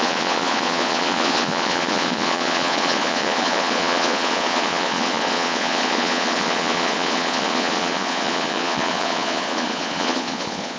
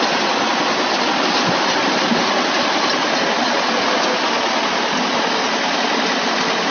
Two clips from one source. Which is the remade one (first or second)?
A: first